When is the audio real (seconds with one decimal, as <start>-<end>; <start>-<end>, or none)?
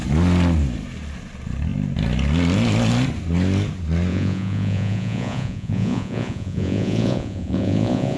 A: 0.0-4.1